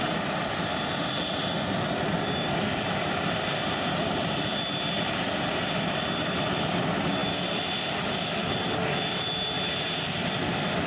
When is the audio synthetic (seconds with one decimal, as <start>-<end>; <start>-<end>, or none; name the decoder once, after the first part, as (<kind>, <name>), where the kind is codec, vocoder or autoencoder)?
none